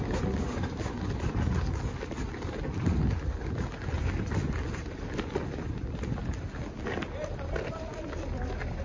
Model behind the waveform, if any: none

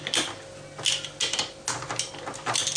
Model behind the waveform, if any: none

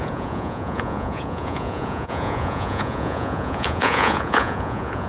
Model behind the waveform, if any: vocoder, Vocos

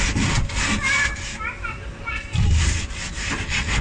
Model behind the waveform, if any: none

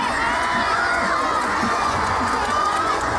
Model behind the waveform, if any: vocoder, Vocos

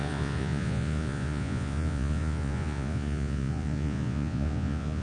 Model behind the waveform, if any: vocoder, Vocos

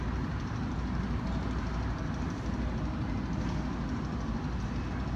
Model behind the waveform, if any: none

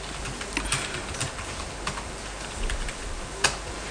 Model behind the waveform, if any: none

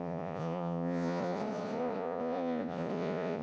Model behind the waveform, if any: vocoder, Vocos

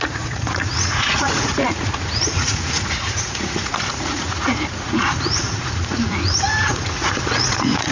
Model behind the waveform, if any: vocoder, Vocos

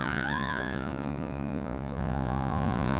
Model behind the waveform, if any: vocoder, Vocos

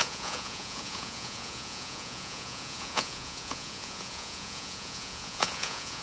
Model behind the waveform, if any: vocoder, Vocos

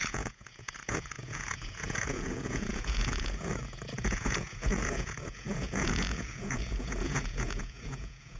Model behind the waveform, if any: vocoder, Vocos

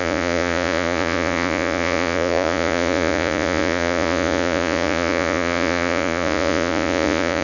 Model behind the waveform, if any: vocoder, Vocos